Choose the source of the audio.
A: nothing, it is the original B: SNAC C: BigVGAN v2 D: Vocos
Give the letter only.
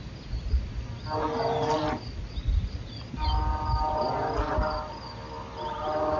A